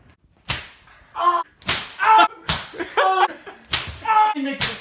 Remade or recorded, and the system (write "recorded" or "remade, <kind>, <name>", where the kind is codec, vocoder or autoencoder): recorded